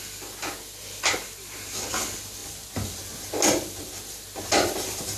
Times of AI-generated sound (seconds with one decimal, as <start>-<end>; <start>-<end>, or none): none

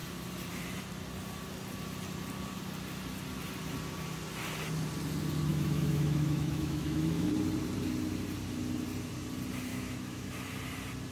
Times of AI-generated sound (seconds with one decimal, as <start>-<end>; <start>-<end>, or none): 5.5-7.3; 9.7-10.3

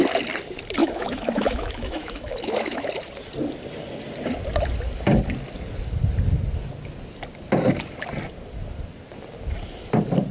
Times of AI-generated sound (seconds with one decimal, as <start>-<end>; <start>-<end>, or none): 0.8-2.9

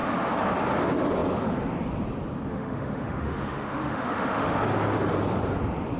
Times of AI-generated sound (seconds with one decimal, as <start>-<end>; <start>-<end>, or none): 2.5-4.5

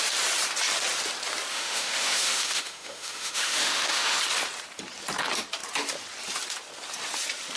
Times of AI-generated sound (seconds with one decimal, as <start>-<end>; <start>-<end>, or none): 1.5-4.2

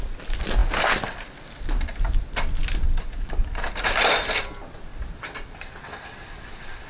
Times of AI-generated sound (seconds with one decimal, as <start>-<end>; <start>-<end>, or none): none

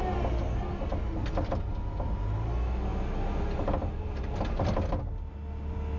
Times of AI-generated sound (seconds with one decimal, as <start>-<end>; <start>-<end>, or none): none